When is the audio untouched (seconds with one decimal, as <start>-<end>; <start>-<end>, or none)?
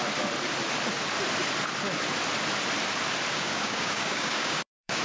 0.0-3.3